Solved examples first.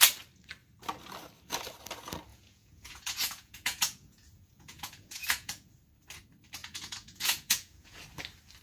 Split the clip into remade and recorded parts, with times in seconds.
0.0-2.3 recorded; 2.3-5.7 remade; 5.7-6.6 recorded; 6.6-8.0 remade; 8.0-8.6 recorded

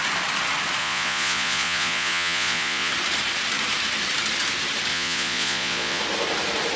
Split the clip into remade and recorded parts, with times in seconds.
0.0-0.8 recorded; 0.8-2.9 remade; 2.9-4.9 recorded; 4.9-6.0 remade; 6.0-6.8 recorded

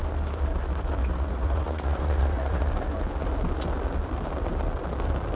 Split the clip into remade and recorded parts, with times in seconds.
0.0-1.0 recorded; 1.0-2.7 remade; 2.7-5.4 recorded